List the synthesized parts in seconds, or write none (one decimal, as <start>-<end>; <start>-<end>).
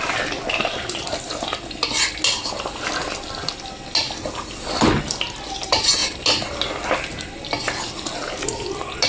none